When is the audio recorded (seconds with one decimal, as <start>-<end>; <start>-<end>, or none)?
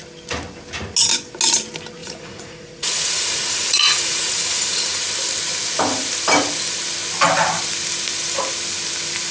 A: 0.0-2.0; 5.0-9.3